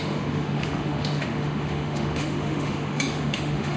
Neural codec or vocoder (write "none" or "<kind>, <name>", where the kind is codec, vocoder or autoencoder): autoencoder, DAC-VAE